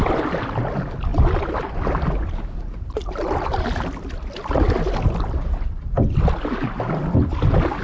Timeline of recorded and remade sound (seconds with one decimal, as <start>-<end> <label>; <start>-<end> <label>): 0.0-7.8 recorded